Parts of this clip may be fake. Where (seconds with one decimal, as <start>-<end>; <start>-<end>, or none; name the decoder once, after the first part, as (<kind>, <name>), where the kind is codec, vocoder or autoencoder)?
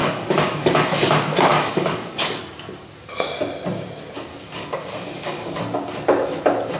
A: 0.0-1.1 (codec, DAC); 1.5-2.4; 4.3-5.6